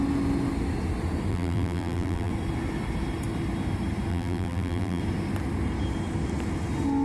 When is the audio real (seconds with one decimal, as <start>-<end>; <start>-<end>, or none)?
0.0-1.3; 2.3-4.1; 5.0-7.0